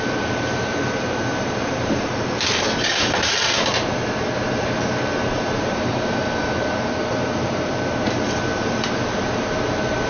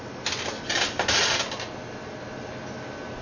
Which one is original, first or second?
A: second